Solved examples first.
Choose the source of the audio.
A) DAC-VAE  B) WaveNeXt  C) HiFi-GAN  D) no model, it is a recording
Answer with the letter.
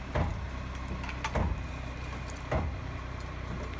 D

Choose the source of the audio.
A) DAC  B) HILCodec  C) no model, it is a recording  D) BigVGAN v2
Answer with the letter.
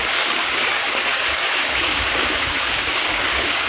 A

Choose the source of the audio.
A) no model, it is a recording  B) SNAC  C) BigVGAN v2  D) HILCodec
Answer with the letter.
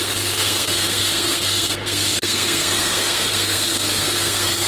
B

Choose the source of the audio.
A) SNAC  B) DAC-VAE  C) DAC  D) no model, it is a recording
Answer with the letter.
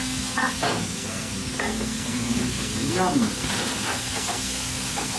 A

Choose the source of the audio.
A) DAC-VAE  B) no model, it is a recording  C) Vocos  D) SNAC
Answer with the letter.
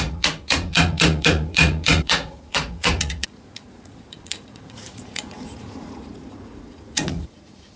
C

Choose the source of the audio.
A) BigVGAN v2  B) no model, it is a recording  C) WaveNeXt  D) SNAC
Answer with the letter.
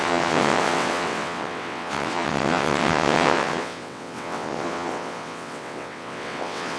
C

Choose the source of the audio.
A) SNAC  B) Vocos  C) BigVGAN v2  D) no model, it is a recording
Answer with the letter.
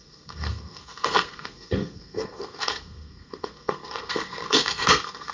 A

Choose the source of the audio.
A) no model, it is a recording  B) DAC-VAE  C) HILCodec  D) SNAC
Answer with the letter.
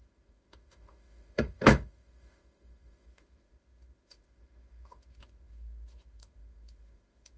B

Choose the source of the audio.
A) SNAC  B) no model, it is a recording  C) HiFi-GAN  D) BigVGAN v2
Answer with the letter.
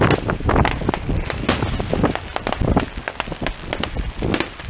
B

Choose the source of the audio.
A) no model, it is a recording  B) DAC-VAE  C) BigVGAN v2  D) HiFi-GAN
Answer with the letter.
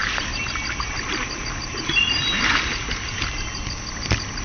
A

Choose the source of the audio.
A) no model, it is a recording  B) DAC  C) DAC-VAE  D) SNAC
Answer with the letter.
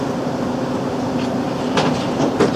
A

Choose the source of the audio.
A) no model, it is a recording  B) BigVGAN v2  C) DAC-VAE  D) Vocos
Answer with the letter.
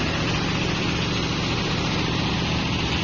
A